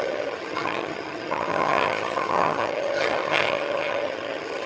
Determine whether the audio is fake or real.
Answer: fake